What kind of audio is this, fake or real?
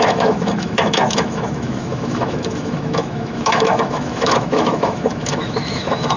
fake